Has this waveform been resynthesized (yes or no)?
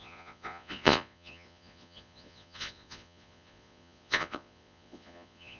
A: yes